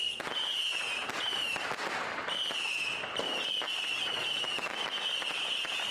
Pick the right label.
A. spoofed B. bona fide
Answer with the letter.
B